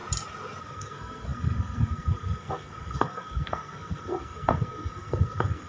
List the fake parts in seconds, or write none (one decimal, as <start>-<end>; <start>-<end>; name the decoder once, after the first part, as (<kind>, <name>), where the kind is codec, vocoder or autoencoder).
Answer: 0.6-5.7 (codec, SNAC)